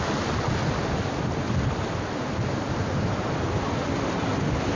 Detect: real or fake real